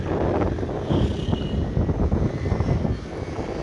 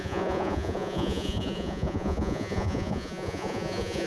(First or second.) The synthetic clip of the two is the second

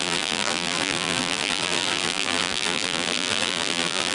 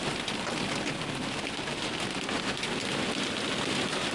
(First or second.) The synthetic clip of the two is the first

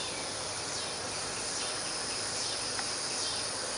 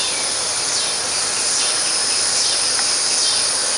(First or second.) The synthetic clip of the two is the first